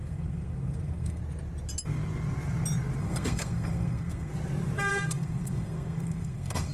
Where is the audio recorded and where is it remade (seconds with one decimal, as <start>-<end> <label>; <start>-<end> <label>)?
0.0-1.2 remade; 1.2-3.0 recorded; 3.0-4.3 remade; 4.3-4.9 recorded; 4.9-6.7 remade